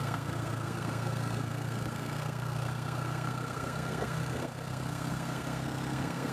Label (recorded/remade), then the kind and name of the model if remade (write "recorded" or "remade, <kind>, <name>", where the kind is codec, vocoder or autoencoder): remade, codec, SNAC